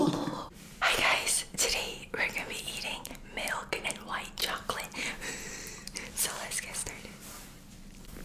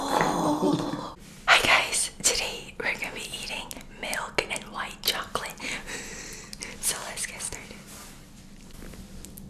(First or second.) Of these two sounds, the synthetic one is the first